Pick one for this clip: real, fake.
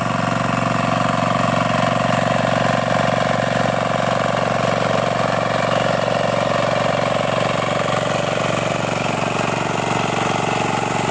real